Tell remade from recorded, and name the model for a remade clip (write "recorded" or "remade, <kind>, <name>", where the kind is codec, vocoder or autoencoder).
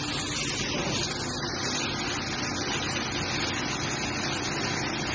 recorded